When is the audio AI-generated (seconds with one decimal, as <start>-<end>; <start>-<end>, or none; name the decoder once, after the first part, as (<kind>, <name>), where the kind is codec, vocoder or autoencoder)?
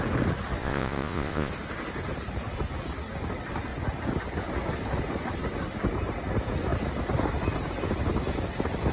0.6-1.5 (vocoder, Vocos)